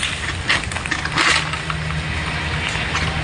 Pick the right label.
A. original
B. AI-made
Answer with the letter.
A